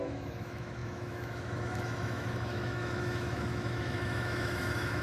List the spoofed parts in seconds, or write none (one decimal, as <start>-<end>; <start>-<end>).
0.0-5.0